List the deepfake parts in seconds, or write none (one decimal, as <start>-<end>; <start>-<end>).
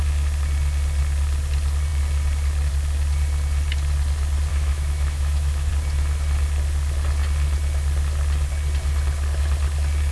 4.5-5.7